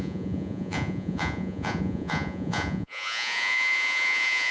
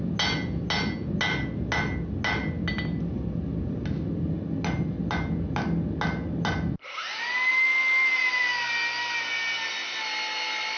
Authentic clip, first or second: second